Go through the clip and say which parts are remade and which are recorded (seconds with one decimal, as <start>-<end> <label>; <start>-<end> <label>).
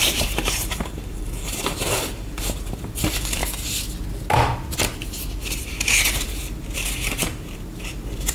0.0-3.4 remade; 3.4-5.6 recorded; 5.6-8.3 remade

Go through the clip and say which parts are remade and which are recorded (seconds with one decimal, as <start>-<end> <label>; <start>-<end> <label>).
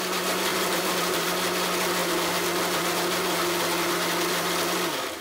0.0-0.5 recorded; 0.5-1.3 remade; 1.3-5.2 recorded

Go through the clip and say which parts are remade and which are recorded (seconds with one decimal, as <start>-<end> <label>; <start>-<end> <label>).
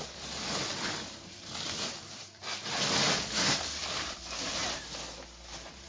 0.0-4.6 remade; 4.6-5.9 recorded